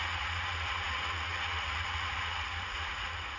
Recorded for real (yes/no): no